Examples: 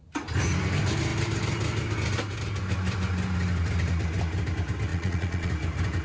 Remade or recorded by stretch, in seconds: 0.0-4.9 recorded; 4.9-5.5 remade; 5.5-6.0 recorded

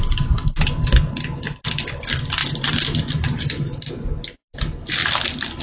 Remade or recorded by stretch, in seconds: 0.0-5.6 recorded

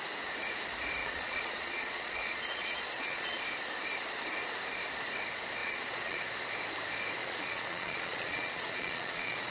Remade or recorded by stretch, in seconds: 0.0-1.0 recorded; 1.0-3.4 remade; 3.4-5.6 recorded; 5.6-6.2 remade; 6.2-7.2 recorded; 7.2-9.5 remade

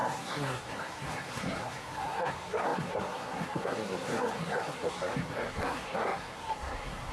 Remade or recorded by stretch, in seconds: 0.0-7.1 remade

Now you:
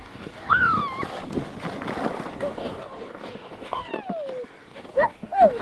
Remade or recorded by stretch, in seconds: 0.0-0.8 remade; 0.8-2.3 recorded; 2.3-3.9 remade; 3.9-4.6 recorded; 4.6-5.6 remade

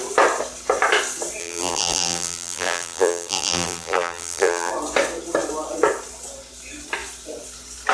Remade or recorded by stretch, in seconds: 0.0-1.4 recorded; 1.4-4.7 remade; 4.7-7.9 recorded

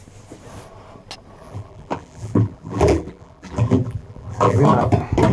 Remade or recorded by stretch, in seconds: 0.0-1.4 recorded; 1.4-4.6 remade; 4.6-5.3 recorded